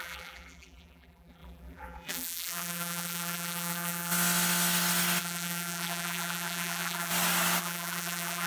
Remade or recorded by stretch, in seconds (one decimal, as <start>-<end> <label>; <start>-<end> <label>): 0.0-4.1 remade; 4.1-5.2 recorded; 5.2-7.1 remade; 7.1-7.6 recorded; 7.6-8.5 remade